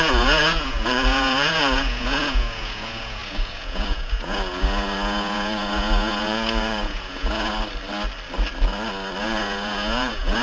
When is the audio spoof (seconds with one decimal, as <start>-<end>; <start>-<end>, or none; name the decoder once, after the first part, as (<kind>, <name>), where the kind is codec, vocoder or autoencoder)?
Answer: 0.0-7.5 (vocoder, Vocos); 9.2-10.4